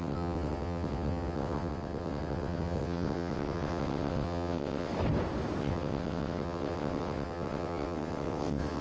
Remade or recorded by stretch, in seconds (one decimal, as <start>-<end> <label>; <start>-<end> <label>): 0.0-4.9 remade; 4.9-5.6 recorded; 5.6-8.8 remade